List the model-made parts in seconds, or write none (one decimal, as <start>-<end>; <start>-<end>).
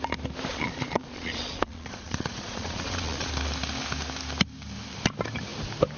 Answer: 0.5-3.3